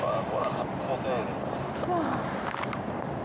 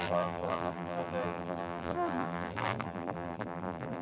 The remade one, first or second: second